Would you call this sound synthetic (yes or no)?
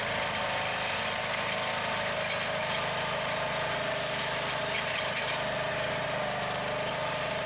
no